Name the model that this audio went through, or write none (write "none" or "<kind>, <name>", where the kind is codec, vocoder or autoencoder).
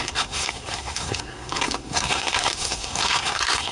codec, SNAC